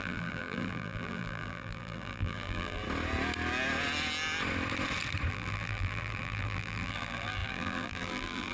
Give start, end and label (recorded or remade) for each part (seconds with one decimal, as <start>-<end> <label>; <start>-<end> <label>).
0.0-2.8 remade; 2.8-5.3 recorded; 5.3-8.5 remade